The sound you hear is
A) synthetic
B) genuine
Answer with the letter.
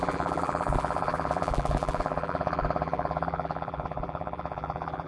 A